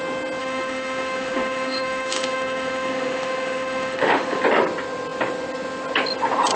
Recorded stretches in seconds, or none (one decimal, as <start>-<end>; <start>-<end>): 0.0-0.4; 4.4-6.6